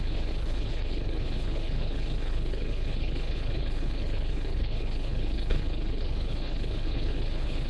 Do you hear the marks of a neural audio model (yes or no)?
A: yes